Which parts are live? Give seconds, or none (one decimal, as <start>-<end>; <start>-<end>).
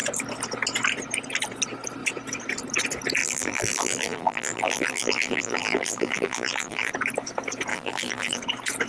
0.0-3.2; 6.9-7.7; 8.4-8.9